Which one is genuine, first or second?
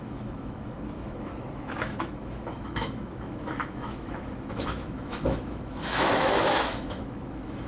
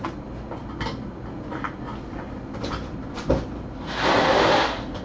second